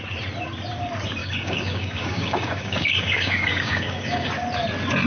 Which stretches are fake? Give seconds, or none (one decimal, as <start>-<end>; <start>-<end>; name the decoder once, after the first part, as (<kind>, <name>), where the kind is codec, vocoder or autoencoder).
1.2-4.3 (codec, DAC)